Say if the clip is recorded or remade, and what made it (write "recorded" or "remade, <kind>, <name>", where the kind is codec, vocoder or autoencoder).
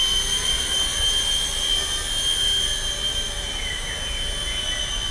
recorded